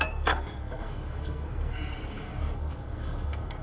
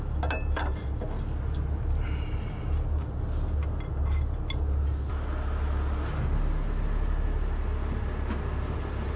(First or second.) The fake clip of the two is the first